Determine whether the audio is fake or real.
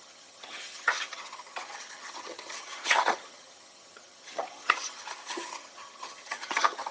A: fake